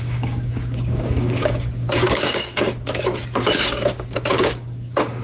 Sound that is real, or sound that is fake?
fake